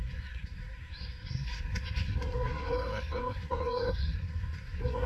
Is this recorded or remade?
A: remade